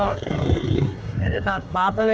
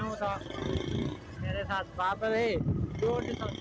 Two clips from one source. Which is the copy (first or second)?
first